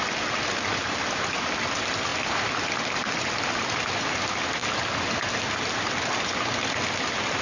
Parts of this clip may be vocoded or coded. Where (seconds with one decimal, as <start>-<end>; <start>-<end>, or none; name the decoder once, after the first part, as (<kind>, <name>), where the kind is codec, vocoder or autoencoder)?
none